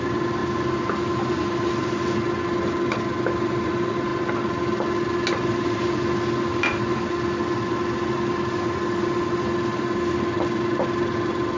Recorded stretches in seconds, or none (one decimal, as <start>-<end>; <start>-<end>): 0.0-11.6